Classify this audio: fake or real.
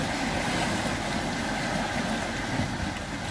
real